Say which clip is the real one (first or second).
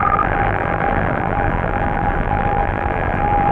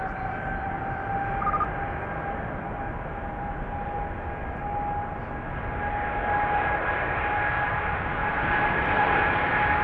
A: second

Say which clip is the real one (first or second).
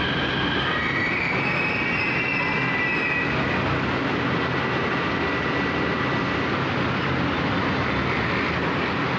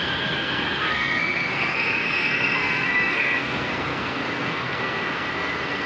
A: first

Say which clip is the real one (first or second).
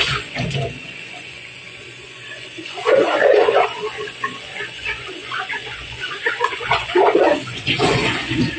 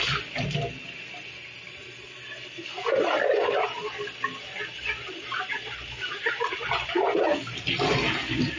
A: second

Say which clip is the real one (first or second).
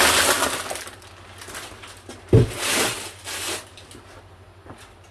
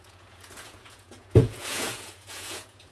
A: first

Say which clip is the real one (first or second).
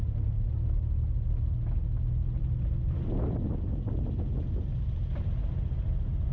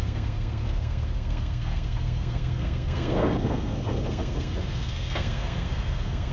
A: first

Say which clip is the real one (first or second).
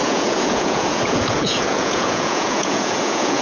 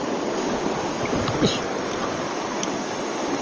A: second